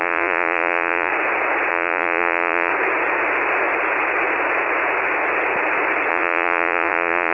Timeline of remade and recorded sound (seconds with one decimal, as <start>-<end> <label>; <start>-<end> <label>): 0.0-1.1 remade; 1.1-1.7 recorded; 1.7-2.7 remade; 2.7-6.1 recorded; 6.1-7.3 remade